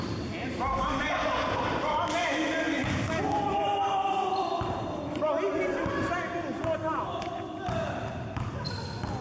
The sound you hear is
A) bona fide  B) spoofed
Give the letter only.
A